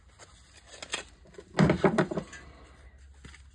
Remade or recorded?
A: recorded